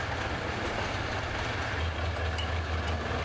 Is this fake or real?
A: real